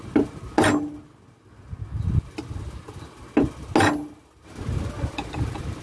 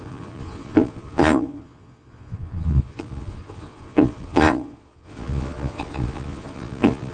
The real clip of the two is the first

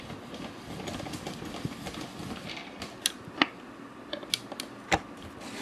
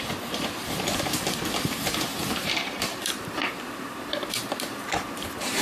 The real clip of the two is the first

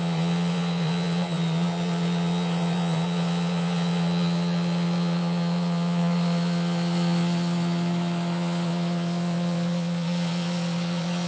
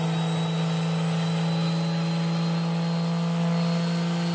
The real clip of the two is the second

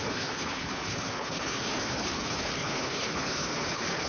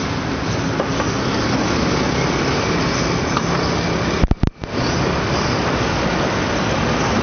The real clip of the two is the second